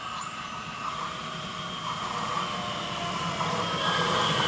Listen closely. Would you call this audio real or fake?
real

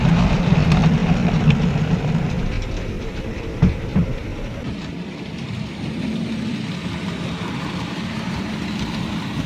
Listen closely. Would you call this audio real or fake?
fake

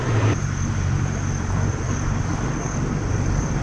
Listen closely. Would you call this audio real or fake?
fake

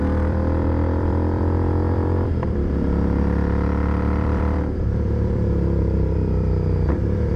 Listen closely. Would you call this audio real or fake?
fake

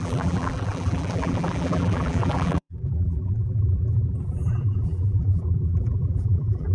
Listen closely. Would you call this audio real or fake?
fake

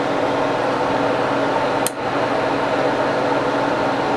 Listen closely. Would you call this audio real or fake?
real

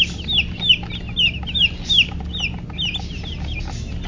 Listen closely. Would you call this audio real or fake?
real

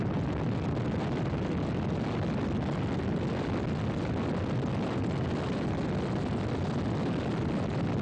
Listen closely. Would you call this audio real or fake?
real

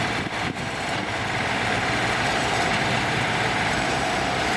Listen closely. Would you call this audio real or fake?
fake